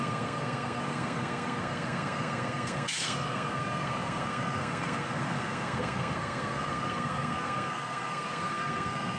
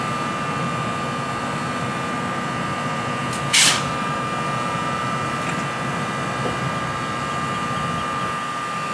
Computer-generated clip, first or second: first